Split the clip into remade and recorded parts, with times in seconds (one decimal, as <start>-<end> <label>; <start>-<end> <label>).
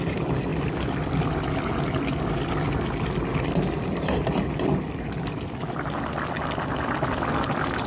0.0-7.9 recorded